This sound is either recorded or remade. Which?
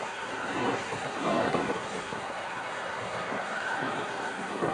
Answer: remade